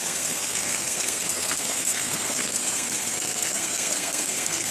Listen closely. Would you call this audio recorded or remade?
remade